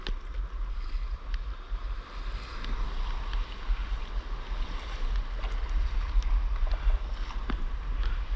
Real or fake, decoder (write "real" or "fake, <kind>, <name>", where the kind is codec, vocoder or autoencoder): real